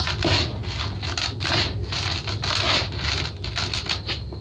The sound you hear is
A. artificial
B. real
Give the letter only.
B